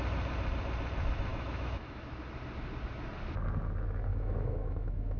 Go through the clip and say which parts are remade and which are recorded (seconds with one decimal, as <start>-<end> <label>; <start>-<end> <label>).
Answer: 0.0-1.3 recorded; 1.3-2.1 remade; 2.1-4.1 recorded; 4.1-5.2 remade